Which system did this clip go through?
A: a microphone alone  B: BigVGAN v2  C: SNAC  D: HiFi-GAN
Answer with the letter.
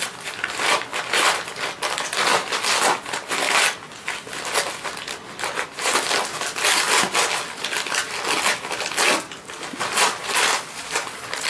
A